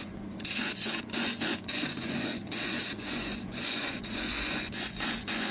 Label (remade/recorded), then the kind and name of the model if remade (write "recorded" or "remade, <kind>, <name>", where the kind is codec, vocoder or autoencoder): remade, vocoder, Vocos